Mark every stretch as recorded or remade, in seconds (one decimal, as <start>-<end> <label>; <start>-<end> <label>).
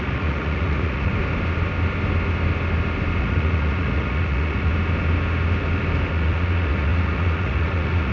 0.0-1.1 remade; 1.1-3.2 recorded; 3.2-4.7 remade; 4.7-6.1 recorded; 6.1-8.1 remade